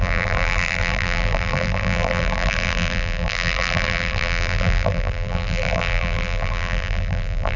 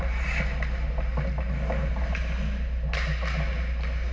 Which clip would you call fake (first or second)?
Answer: first